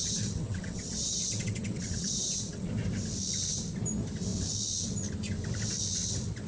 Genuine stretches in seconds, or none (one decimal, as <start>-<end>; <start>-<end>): 2.7-6.5